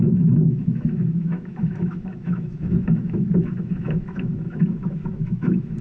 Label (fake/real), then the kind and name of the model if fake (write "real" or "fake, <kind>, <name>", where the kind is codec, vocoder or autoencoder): fake, autoencoder, DAC-VAE